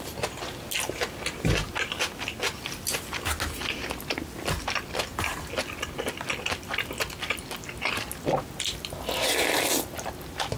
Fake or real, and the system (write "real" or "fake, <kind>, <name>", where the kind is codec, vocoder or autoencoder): real